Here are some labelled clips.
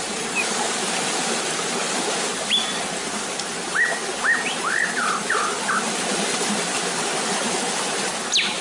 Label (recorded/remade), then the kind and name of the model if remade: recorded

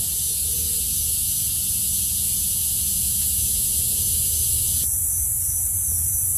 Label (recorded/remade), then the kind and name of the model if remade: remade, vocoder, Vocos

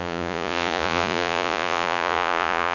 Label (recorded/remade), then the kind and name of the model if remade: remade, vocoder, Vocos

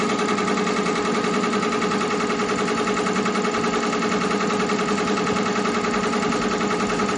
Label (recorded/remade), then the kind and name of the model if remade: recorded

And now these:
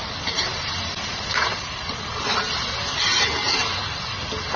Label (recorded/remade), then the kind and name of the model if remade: recorded